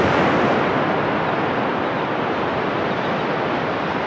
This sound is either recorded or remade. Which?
recorded